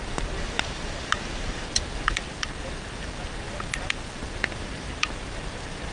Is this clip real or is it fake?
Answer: real